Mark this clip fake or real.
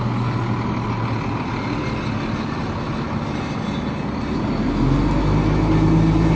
real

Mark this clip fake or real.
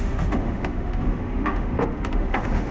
fake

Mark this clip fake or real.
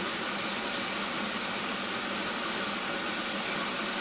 real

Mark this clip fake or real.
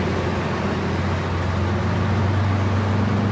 real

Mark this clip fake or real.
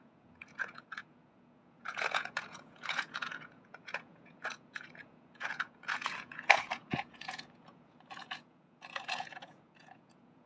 fake